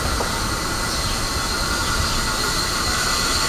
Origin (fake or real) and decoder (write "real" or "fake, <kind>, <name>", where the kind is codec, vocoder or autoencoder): real